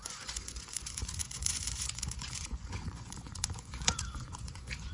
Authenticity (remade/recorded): remade